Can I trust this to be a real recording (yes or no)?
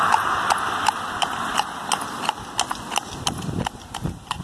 yes